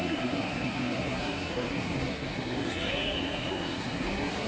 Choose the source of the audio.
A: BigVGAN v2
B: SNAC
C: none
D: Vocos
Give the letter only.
B